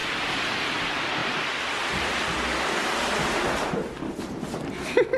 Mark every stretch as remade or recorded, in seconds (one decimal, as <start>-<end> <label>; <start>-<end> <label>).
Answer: 0.0-5.2 recorded

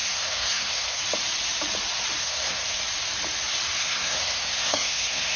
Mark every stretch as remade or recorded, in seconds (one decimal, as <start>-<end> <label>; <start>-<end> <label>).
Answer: 0.0-1.0 remade; 1.0-2.2 recorded; 2.2-2.8 remade; 2.8-3.8 recorded; 3.8-5.4 remade